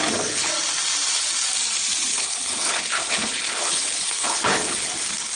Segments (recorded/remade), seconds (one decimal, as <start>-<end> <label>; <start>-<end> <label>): 0.0-0.5 remade; 0.5-2.1 recorded; 2.1-4.9 remade; 4.9-5.4 recorded